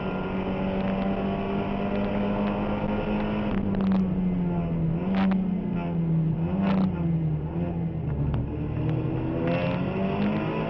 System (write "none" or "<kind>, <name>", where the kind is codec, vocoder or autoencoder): none